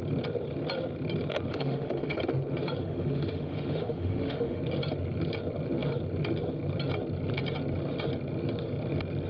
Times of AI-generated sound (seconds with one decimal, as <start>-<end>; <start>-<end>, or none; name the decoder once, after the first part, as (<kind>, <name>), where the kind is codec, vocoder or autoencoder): 1.5-2.2 (autoencoder, DAC-VAE); 2.8-4.6